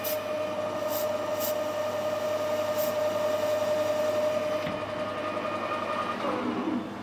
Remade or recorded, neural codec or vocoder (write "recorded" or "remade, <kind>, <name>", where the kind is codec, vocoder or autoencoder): recorded